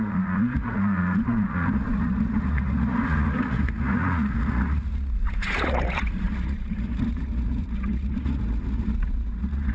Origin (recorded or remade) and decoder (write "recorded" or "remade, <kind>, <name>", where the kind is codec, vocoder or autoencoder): remade, vocoder, Vocos